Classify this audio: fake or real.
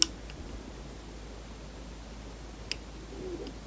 real